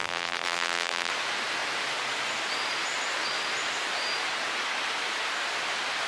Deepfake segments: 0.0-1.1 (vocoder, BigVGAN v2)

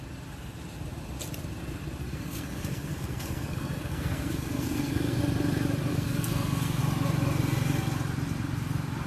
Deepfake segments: 2.0-5.2 (codec, SNAC); 5.9-6.8

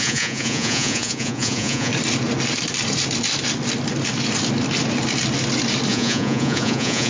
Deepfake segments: 0.0-1.9 (vocoder, Vocos); 5.9-7.1